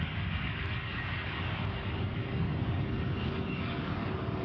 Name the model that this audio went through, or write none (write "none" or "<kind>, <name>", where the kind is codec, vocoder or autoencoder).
codec, DAC